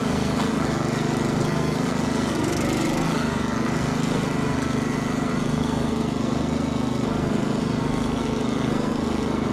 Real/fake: fake